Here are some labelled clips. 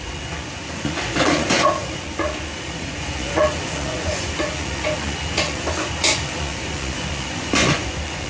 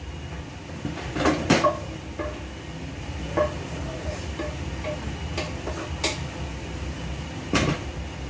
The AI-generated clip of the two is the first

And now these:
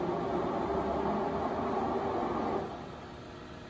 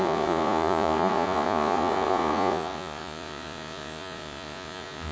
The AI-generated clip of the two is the second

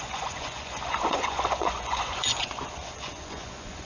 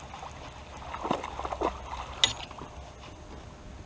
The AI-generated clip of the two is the first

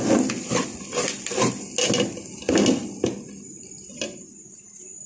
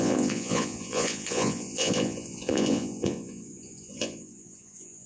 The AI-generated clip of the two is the second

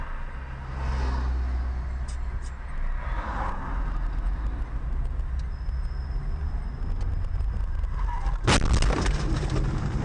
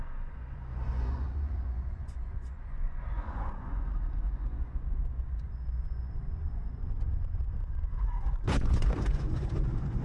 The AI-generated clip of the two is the second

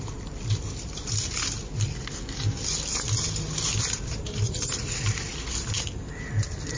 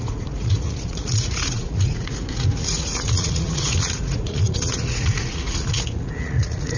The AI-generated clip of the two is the second